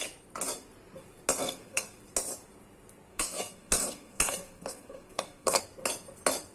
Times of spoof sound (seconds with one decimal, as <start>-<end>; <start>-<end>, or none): 1.4-2.0; 3.1-5.6